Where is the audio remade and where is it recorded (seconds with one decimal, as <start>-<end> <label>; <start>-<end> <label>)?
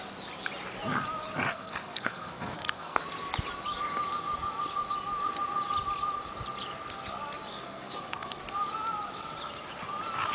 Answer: 0.0-1.5 recorded; 1.5-3.0 remade; 3.0-7.5 recorded; 7.5-8.4 remade; 8.4-10.3 recorded